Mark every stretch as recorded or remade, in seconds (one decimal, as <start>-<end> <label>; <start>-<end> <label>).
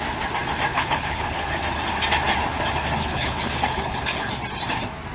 0.0-0.7 recorded; 0.7-1.6 remade; 1.6-3.0 recorded; 3.0-4.3 remade; 4.3-5.1 recorded